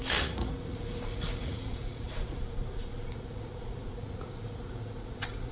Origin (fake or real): fake